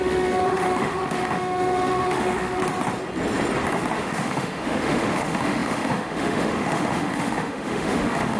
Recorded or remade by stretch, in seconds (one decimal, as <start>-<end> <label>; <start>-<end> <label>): 0.0-2.6 remade; 2.6-4.0 recorded; 4.0-8.4 remade